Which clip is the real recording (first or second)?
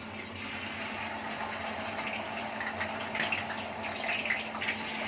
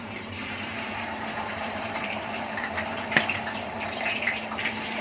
first